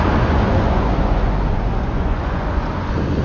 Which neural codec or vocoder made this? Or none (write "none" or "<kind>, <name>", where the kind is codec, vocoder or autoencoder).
vocoder, Vocos